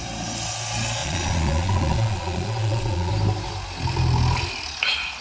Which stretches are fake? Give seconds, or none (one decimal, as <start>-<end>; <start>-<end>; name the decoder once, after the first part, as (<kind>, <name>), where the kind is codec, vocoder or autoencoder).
1.0-3.1 (vocoder, Vocos)